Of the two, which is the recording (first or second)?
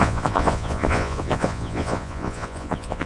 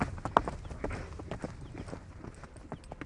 second